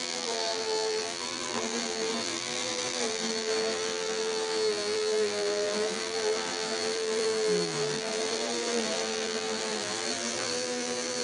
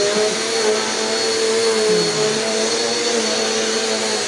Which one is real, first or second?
second